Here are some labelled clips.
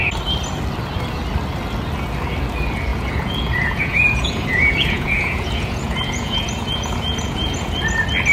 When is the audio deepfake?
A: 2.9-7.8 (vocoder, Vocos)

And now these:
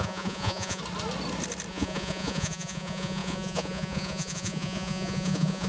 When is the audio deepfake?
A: 0.0-0.8 (vocoder, Vocos); 1.7-5.7

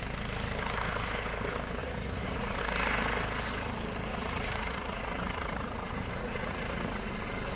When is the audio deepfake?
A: 1.8-2.6 (vocoder, Vocos); 4.1-7.1

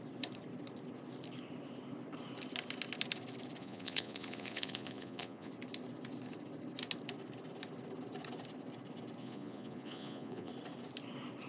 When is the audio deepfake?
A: 3.6-5.5 (vocoder, Vocos); 9.2-10.5

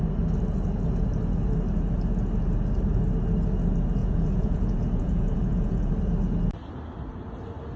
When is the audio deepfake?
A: 4.0-5.9 (vocoder, Vocos)

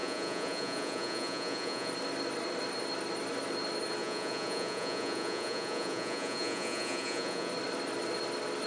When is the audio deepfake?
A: 0.0-1.9 (vocoder, Vocos); 4.0-7.5

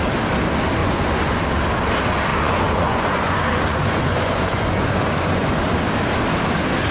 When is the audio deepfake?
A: 0.8-1.4 (vocoder, Vocos); 2.3-5.6